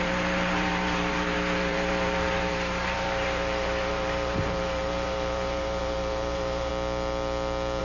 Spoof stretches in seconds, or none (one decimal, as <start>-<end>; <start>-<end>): 0.0-6.7